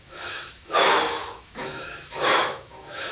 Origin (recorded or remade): remade